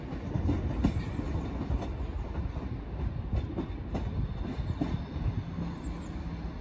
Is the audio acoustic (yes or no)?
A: yes